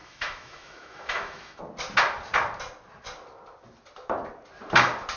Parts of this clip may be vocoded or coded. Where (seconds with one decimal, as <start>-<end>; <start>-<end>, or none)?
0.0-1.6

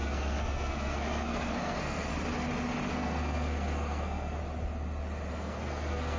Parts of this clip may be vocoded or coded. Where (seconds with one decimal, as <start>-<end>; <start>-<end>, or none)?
0.0-2.1; 2.9-4.4; 5.3-6.2

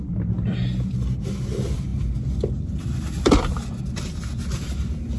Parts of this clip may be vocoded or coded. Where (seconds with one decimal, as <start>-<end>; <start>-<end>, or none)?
none

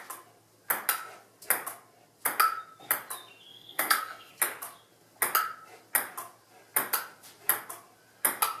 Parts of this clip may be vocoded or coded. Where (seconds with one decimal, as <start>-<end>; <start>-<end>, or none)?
3.5-4.3

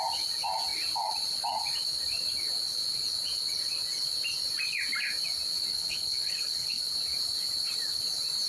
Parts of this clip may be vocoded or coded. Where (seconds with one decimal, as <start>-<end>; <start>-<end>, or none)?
5.7-6.8

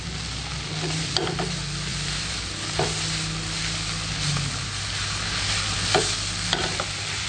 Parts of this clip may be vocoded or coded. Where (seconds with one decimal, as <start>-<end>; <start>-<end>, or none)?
1.9-2.8

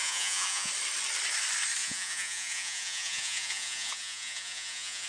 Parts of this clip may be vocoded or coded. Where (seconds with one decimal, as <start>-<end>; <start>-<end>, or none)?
0.0-0.7; 1.8-5.1

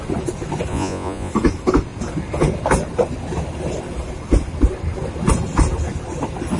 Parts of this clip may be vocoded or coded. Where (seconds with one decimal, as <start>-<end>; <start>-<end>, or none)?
0.7-1.3